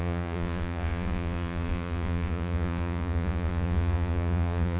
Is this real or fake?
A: fake